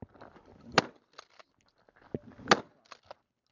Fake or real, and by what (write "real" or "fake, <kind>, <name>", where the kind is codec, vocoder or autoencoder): real